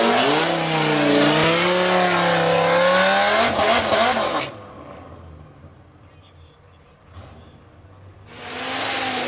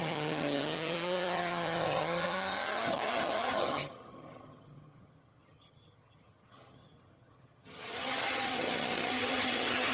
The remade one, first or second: second